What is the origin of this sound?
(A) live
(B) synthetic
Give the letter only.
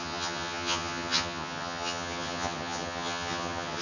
B